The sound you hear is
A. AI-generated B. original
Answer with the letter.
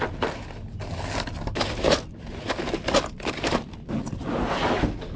B